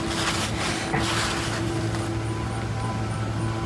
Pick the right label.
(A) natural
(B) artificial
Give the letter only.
A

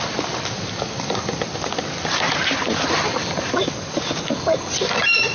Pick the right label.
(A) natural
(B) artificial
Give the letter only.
A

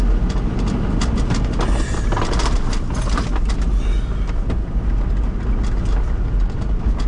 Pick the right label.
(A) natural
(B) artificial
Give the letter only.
A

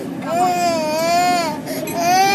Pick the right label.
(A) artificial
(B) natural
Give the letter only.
B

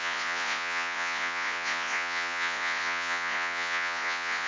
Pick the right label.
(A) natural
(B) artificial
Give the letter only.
B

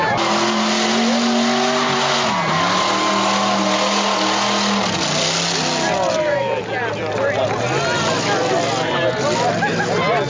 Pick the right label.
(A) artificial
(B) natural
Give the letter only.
B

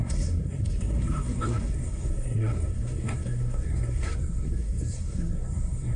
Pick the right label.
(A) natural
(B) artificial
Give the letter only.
B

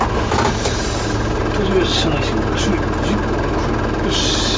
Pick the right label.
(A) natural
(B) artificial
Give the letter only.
A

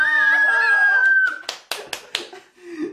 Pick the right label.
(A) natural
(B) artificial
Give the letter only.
A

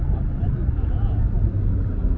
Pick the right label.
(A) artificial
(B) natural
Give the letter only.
B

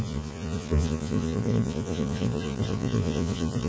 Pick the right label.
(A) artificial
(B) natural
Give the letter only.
A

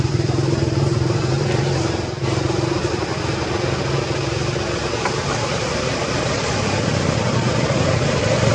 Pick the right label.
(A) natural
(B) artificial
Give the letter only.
B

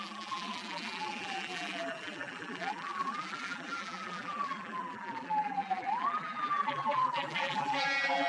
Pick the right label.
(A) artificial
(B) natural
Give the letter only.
A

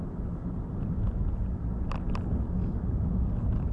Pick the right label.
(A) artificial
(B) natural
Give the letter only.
B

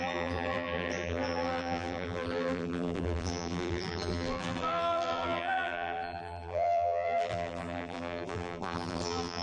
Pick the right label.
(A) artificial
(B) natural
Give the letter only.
A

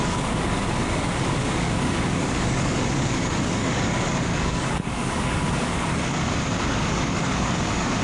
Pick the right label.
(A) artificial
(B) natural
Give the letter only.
A